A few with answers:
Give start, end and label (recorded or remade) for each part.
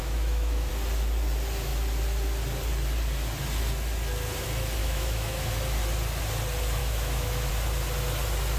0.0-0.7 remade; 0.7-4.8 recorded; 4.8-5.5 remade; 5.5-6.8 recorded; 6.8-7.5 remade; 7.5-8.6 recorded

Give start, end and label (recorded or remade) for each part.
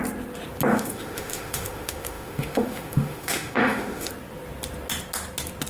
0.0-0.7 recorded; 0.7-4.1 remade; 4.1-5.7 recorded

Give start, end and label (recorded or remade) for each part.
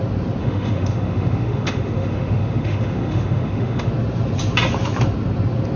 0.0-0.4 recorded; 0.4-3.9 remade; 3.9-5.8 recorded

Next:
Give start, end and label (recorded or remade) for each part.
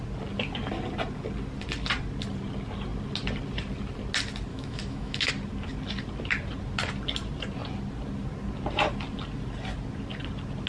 0.0-4.5 recorded; 4.5-5.3 remade; 5.3-10.7 recorded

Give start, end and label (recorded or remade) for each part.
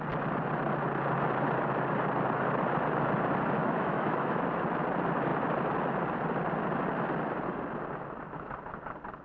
0.0-3.6 recorded; 3.6-4.4 remade; 4.4-9.2 recorded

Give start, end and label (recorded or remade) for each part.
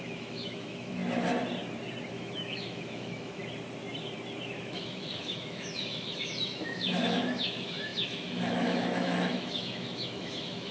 0.0-1.0 remade; 1.0-2.1 recorded; 2.1-3.4 remade; 3.4-4.6 recorded; 4.6-10.7 remade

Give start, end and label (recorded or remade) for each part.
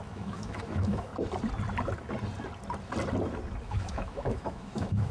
0.0-1.1 remade; 1.1-3.6 recorded; 3.6-5.1 remade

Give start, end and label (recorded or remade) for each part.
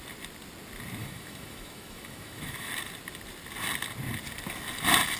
0.0-1.0 recorded; 1.0-2.7 remade; 2.7-5.2 recorded